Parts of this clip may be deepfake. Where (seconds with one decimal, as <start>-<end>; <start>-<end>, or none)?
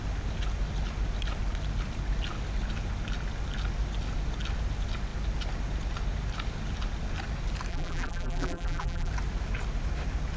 7.7-9.1